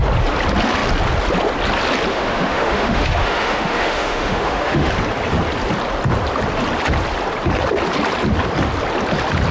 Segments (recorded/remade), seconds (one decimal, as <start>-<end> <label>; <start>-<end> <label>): 0.0-2.1 recorded; 2.1-4.9 remade; 4.9-9.5 recorded